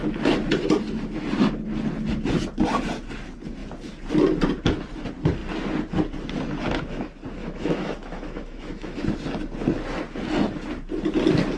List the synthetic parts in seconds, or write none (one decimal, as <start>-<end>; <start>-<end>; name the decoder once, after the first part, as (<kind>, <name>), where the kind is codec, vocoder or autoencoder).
7.4-9.0 (autoencoder, DAC-VAE)